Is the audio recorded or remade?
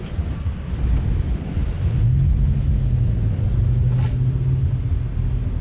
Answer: recorded